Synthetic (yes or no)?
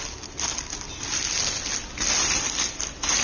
no